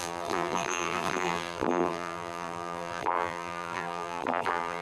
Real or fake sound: fake